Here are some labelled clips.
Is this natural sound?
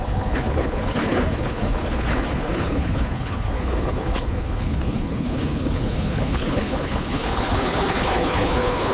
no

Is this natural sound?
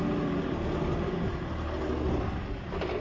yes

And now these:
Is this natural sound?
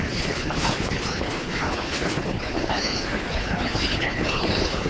no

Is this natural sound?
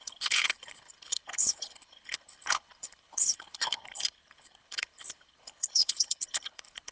no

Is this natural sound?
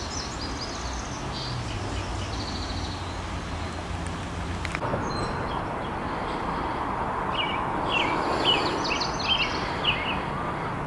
yes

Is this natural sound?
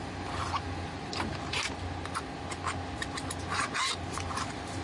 yes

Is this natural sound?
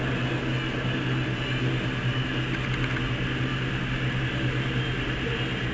yes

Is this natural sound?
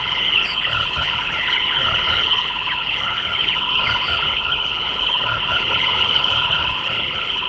no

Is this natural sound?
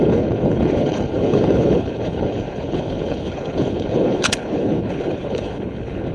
no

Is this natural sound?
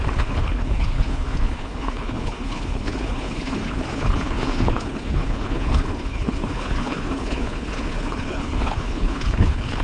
no